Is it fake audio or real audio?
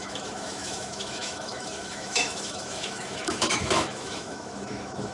fake